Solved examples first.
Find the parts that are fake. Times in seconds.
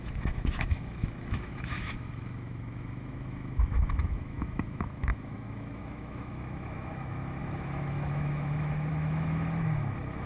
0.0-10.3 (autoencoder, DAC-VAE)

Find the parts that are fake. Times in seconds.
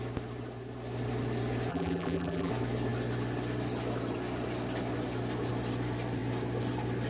1.7-2.5 (vocoder, BigVGAN v2)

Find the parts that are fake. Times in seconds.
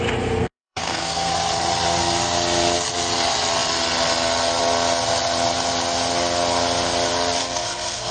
0.4-1.3 (codec, SNAC); 7.4-8.1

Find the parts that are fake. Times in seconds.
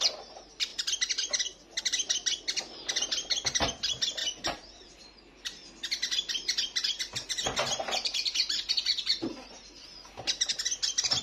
none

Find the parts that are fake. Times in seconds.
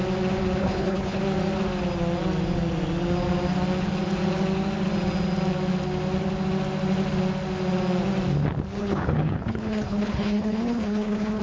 0.6-1.2 (codec, HILCodec); 8.8-11.4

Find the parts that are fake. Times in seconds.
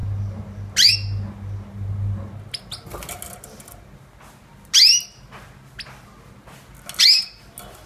none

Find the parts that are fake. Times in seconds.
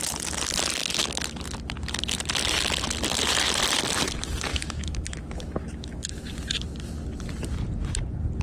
4.5-6.3 (autoencoder, DAC-VAE)